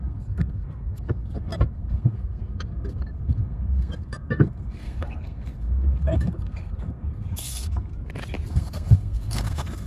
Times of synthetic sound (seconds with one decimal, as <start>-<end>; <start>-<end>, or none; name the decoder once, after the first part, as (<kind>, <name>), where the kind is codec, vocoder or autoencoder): 0.0-7.9 (codec, SNAC); 8.5-9.9